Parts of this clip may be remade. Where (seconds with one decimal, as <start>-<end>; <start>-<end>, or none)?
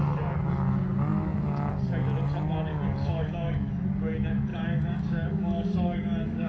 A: 2.7-3.7; 4.5-6.5